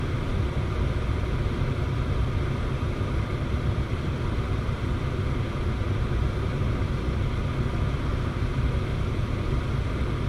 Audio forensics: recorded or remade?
remade